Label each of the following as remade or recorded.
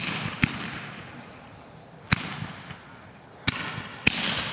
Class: recorded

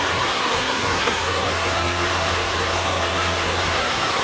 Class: remade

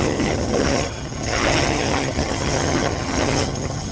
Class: remade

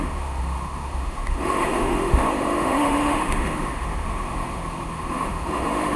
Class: remade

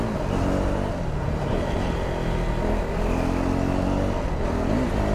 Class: recorded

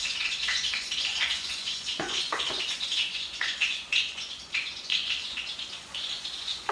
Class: remade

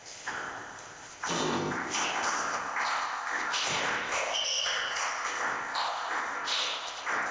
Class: remade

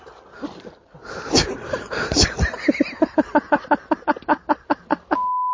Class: recorded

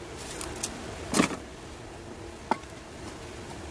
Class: recorded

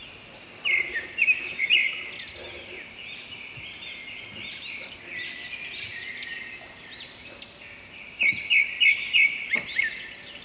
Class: remade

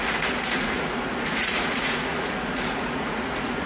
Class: remade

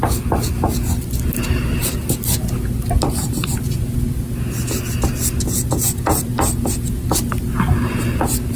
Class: recorded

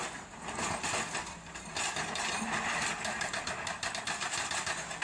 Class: recorded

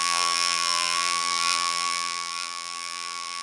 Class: remade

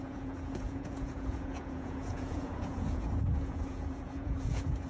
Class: remade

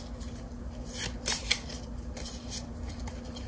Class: recorded